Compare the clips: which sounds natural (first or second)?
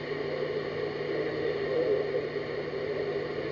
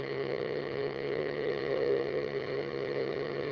first